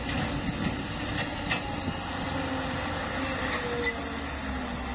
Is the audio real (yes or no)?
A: yes